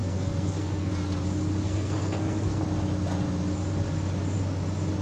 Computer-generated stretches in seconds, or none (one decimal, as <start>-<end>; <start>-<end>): 0.0-0.9; 1.6-2.6